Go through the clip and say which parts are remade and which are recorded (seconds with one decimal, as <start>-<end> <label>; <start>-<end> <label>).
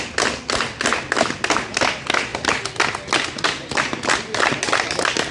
0.0-5.3 recorded